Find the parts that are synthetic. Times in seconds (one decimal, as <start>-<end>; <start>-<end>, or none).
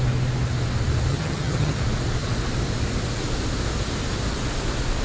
1.1-1.8